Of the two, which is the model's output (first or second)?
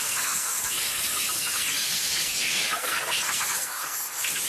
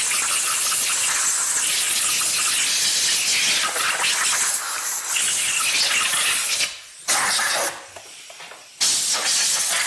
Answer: first